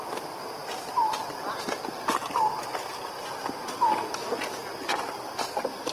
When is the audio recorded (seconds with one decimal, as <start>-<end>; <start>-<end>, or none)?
0.0-5.9

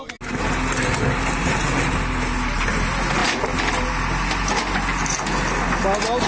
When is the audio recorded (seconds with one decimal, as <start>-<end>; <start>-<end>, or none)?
0.0-6.3

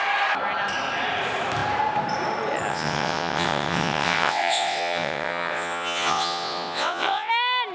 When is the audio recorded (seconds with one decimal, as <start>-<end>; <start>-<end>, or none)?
0.0-2.7; 7.3-7.7